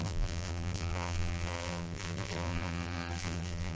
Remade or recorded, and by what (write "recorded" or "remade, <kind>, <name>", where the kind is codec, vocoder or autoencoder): remade, vocoder, BigVGAN v2